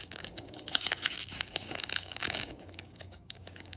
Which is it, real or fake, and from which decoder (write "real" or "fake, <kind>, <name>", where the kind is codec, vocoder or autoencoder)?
fake, codec, DAC